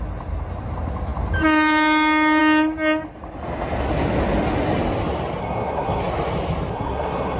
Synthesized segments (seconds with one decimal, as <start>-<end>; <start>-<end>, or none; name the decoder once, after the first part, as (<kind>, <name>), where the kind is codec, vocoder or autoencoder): 5.4-6.0 (codec, SNAC); 6.7-7.4